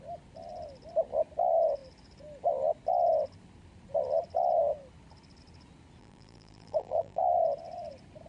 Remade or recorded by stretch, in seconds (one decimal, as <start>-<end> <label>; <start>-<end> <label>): 0.0-6.0 recorded; 6.0-7.2 remade; 7.2-8.3 recorded

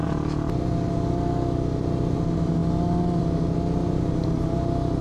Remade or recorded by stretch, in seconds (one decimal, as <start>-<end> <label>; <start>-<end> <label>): 0.0-5.0 recorded

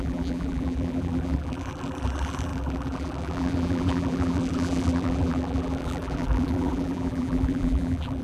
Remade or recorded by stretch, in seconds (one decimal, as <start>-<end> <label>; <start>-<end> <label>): 0.0-8.2 remade